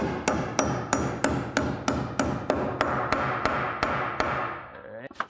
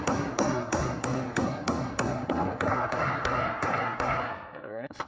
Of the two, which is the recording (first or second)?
first